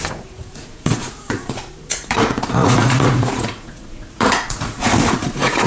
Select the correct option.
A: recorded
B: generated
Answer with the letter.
B